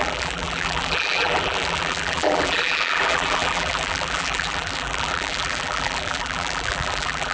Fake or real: fake